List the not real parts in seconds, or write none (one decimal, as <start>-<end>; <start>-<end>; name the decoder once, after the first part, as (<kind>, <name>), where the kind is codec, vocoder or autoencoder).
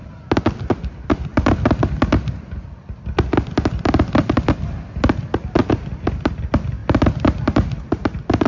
none